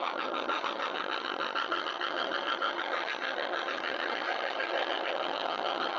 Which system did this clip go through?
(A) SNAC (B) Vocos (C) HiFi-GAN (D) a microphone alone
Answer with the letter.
C